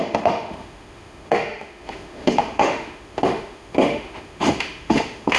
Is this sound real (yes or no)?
no